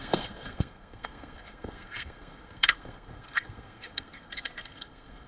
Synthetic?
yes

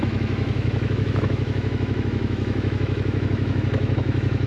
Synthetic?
yes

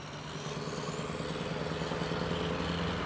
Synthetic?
no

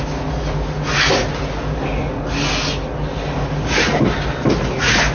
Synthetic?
no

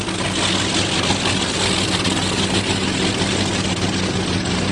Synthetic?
no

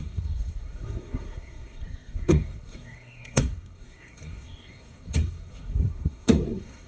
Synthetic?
yes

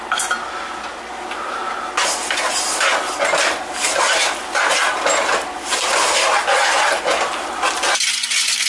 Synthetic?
no